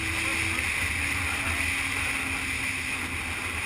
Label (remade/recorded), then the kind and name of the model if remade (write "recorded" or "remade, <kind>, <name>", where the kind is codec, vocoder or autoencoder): recorded